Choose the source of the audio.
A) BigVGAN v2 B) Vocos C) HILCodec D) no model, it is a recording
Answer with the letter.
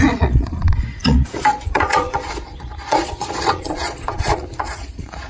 B